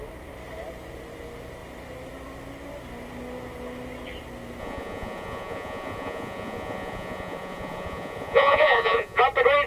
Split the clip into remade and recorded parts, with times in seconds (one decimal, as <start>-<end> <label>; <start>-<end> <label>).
0.0-4.6 recorded; 4.6-9.2 remade; 9.2-9.7 recorded